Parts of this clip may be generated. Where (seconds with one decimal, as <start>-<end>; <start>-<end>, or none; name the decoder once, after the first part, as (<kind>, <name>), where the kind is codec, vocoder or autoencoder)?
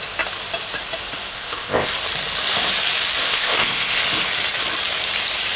1.3-1.9 (codec, ZipCodec); 3.2-4.0